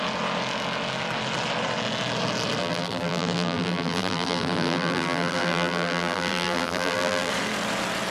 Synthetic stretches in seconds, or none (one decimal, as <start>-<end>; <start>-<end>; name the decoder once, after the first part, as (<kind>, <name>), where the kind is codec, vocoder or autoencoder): 2.6-7.3 (vocoder, BigVGAN v2)